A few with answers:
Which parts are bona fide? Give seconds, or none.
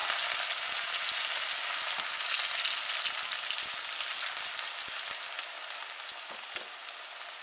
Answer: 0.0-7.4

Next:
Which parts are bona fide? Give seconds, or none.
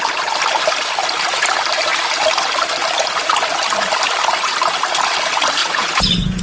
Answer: 0.0-5.6